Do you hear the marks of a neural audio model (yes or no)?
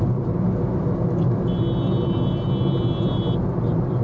no